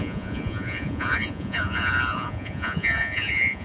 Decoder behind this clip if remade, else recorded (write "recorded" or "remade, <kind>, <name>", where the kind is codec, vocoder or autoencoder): remade, vocoder, Vocos